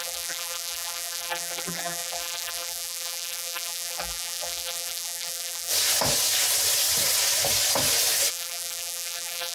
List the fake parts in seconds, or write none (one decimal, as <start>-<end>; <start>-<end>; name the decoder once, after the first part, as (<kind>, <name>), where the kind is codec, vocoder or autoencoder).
0.0-5.7 (vocoder, BigVGAN v2); 8.3-9.5